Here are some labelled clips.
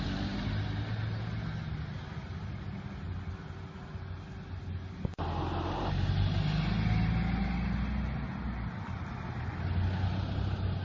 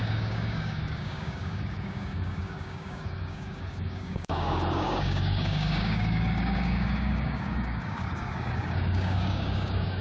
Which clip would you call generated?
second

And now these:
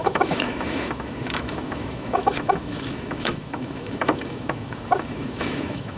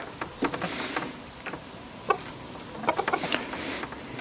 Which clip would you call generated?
first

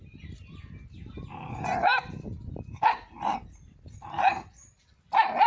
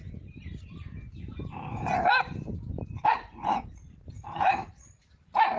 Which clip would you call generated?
second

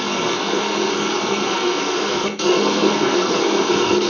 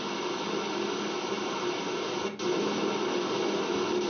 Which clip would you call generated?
first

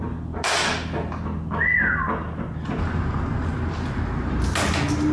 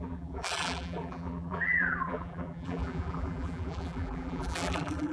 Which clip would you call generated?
second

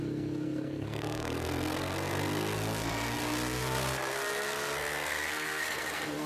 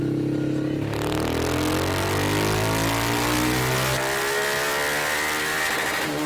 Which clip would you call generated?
first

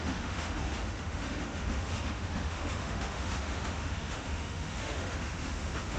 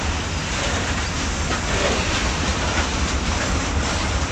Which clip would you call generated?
first